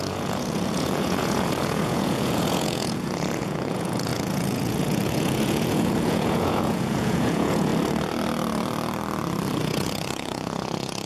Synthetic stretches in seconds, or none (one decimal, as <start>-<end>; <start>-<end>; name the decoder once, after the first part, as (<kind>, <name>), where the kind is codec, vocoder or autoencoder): 0.0-7.7 (vocoder, Vocos); 9.6-11.1

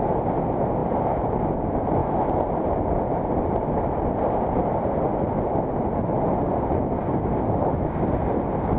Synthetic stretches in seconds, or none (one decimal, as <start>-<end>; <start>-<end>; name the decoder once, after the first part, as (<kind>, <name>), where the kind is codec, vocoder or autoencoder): none

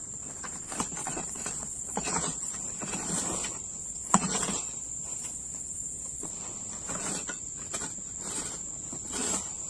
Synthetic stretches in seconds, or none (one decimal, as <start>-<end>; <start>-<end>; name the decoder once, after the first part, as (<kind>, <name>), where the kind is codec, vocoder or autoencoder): 1.0-2.5 (vocoder, Vocos); 3.8-6.3

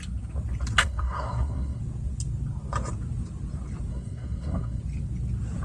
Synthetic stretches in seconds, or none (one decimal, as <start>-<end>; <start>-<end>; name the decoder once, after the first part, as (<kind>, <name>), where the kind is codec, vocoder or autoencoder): 0.8-1.8 (codec, SNAC); 3.9-4.8

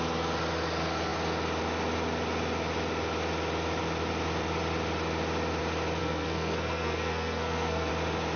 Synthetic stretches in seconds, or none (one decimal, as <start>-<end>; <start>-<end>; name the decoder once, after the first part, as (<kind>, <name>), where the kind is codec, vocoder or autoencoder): 6.0-7.9 (codec, SNAC)